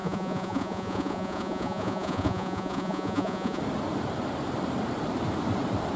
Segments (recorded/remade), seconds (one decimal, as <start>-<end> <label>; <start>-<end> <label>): 0.0-3.6 remade; 3.6-6.0 recorded